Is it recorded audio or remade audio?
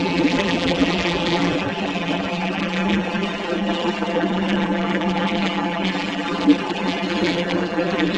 remade